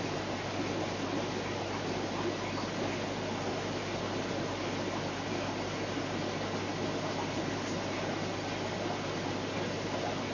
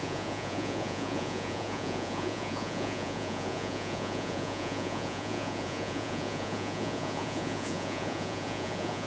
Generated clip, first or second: second